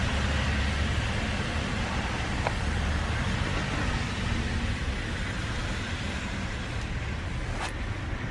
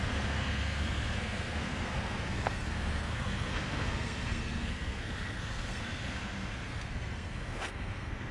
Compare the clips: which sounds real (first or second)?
first